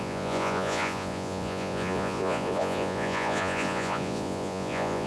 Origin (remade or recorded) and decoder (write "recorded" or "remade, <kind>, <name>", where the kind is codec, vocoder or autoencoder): remade, vocoder, Vocos